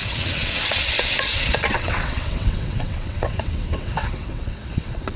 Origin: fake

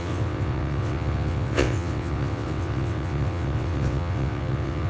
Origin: fake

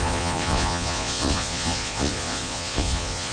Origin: fake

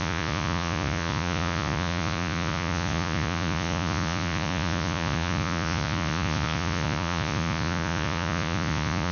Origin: fake